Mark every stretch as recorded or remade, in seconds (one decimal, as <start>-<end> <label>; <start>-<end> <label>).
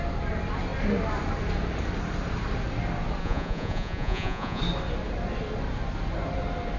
0.0-3.2 recorded; 3.2-4.6 remade; 4.6-6.8 recorded